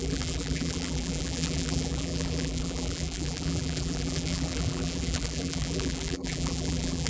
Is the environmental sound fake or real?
fake